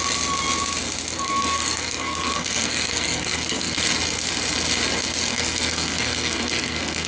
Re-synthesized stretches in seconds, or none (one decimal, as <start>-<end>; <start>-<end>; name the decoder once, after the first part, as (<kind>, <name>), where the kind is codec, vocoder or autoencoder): 1.1-3.8 (codec, SNAC); 5.3-7.1